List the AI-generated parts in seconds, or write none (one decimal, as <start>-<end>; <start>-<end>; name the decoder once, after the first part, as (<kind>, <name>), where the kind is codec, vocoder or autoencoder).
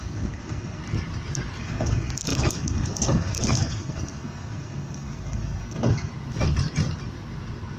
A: 0.0-0.8 (codec, SNAC); 1.6-6.1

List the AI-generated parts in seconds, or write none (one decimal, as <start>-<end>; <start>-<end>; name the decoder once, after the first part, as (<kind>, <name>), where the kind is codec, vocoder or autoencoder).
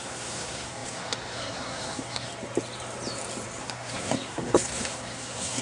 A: 0.0-2.3 (codec, SNAC); 3.6-5.6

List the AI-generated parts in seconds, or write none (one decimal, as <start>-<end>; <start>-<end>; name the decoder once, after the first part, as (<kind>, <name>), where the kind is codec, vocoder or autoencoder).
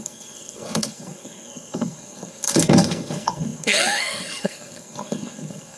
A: 0.0-5.8 (codec, SNAC)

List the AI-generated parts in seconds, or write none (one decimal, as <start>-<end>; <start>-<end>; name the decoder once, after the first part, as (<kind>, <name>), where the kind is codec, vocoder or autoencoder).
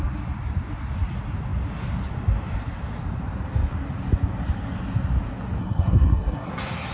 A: 5.6-6.5 (codec, SNAC)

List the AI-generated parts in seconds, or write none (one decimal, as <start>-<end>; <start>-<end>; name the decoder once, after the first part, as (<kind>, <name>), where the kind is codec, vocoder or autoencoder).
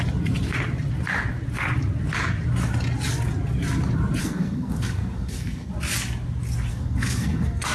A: 4.2-5.7 (codec, SNAC); 6.7-7.7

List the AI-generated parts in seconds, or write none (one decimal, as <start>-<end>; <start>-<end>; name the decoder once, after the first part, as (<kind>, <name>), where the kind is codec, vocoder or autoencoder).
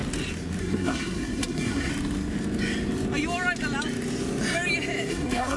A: 0.6-1.9 (codec, SNAC); 5.1-5.6